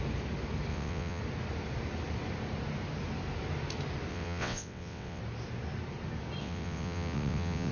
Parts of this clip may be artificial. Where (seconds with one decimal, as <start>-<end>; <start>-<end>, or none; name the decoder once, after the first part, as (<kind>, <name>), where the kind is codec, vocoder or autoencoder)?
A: 0.7-1.2 (vocoder, WaveNeXt); 4.1-5.2; 6.4-7.7